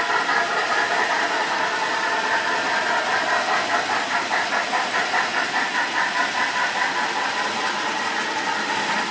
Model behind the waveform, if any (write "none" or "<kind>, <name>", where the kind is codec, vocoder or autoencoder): none